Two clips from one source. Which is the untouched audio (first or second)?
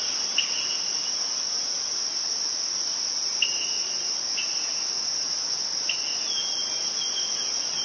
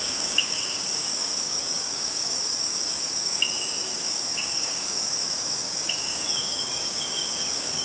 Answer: first